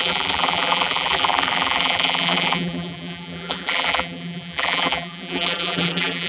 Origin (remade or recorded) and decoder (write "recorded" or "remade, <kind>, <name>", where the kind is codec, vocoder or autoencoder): remade, vocoder, BigVGAN v2